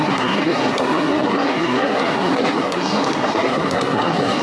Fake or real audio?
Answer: fake